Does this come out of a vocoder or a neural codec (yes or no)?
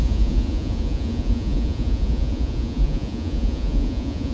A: yes